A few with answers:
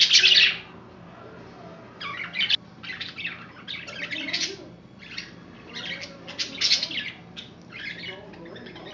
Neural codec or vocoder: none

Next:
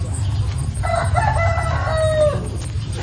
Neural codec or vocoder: none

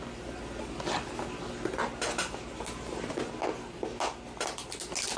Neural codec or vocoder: none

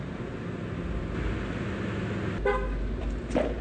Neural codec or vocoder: none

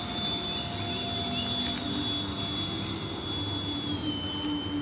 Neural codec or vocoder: none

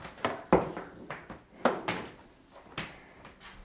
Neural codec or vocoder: none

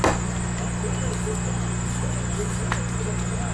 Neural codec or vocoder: none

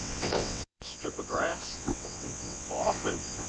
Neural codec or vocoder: vocoder, WaveNeXt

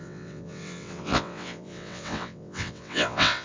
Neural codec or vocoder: vocoder, WaveNeXt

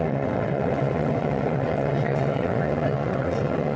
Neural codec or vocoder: vocoder, WaveNeXt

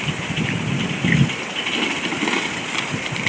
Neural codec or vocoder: none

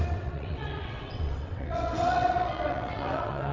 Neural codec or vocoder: vocoder, WaveNeXt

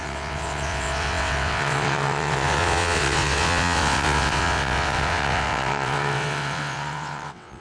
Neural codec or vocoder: vocoder, WaveNeXt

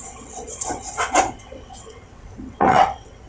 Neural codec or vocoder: vocoder, WaveNeXt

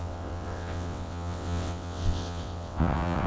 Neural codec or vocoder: vocoder, WaveNeXt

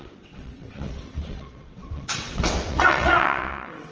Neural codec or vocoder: vocoder, WaveNeXt